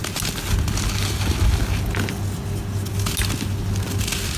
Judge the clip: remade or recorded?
recorded